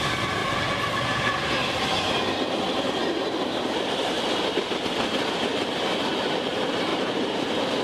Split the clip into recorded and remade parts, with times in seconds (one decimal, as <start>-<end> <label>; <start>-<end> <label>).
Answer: 0.0-0.4 recorded; 0.4-1.3 remade; 1.3-3.0 recorded; 3.0-5.5 remade; 5.5-6.9 recorded; 6.9-7.8 remade